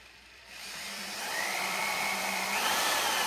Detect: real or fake fake